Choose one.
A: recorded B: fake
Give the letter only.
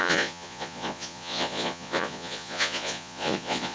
B